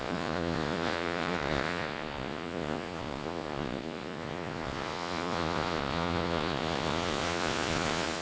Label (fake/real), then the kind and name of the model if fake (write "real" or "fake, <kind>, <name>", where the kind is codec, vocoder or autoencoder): fake, vocoder, Vocos